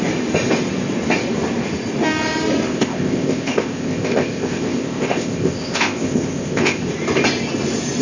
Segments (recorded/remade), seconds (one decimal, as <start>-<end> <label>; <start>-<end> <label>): 0.0-2.7 recorded; 2.7-6.9 remade; 6.9-8.0 recorded